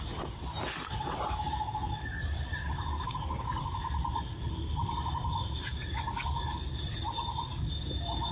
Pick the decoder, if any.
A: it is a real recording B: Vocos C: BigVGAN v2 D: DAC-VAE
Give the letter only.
A